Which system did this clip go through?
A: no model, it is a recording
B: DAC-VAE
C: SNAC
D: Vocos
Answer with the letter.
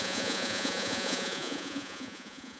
D